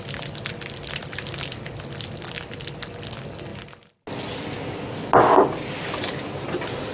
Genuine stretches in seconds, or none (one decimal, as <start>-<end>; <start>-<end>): 0.0-6.9